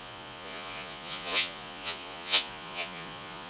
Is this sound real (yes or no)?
no